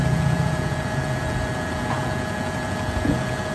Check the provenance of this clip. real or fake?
fake